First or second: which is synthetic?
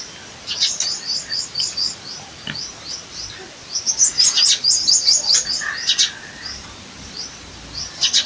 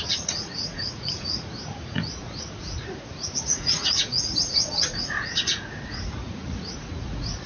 second